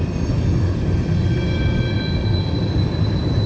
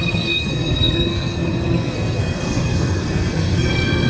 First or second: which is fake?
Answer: second